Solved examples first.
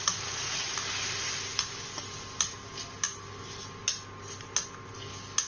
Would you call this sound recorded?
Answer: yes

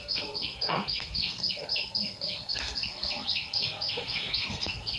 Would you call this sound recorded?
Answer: no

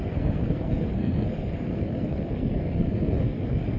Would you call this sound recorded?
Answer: no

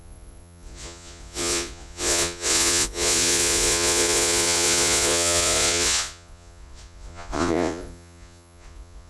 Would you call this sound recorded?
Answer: no